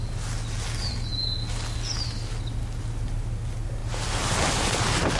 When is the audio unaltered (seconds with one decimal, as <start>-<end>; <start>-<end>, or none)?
0.0-5.2